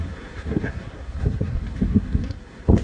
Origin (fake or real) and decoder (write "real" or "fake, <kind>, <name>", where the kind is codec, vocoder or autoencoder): fake, codec, SNAC